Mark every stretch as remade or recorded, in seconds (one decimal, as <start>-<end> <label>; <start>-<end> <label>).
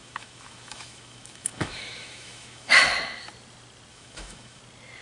0.0-2.7 remade; 2.7-3.9 recorded; 3.9-4.6 remade; 4.6-5.0 recorded